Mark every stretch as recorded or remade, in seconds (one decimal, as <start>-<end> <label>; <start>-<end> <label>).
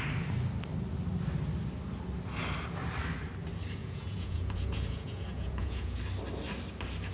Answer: 0.0-3.8 recorded; 3.8-6.0 remade; 6.0-7.1 recorded